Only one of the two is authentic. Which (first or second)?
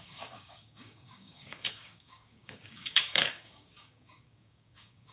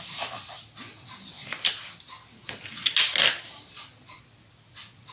second